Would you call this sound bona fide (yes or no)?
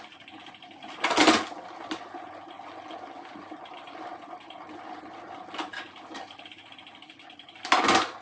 yes